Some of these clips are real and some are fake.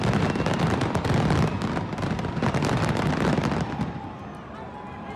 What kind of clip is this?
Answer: fake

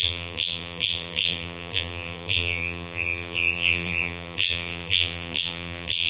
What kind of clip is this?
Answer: fake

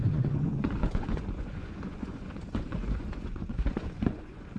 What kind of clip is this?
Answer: fake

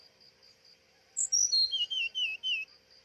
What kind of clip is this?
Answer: real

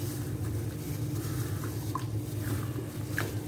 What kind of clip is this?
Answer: real